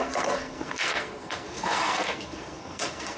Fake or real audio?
fake